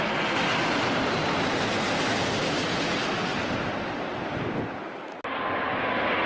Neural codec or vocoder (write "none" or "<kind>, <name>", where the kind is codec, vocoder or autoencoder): none